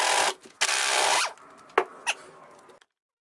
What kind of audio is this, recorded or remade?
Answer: recorded